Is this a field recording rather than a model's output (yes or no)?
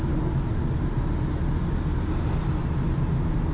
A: yes